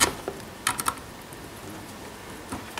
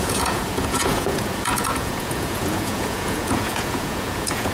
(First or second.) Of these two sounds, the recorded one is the first